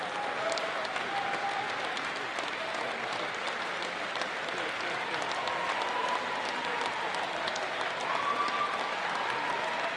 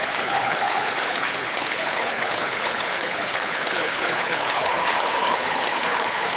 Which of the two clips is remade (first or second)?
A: second